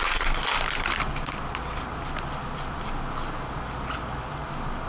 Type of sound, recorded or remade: recorded